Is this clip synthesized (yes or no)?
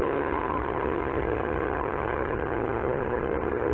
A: yes